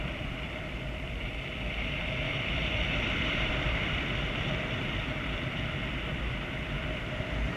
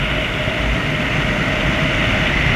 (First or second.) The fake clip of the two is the first